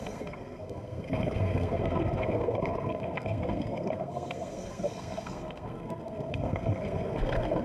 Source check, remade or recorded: remade